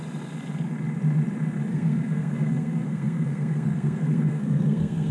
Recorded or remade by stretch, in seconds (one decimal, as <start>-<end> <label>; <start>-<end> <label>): 0.0-1.7 recorded; 1.7-5.1 remade